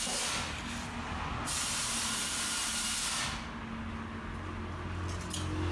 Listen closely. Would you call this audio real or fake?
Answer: real